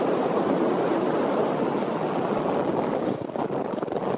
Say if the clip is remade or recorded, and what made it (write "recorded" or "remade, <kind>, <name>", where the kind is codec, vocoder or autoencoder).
recorded